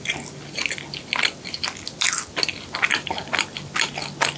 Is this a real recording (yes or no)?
yes